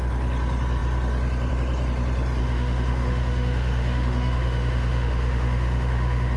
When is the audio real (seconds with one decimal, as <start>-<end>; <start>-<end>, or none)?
0.0-2.4